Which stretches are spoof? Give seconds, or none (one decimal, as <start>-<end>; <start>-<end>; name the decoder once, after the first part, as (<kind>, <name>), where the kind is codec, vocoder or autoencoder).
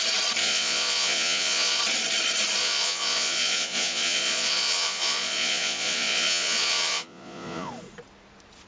0.4-1.8 (vocoder, Vocos); 2.6-7.7